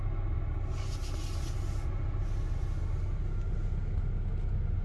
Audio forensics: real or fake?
real